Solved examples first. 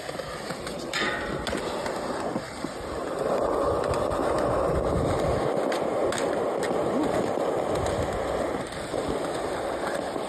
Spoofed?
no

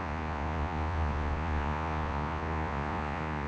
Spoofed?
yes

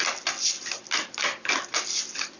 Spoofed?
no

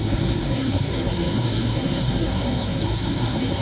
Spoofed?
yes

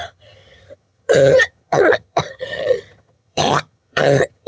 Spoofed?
yes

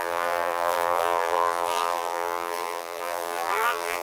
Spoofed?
yes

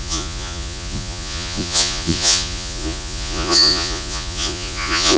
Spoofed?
yes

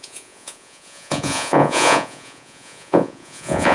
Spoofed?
yes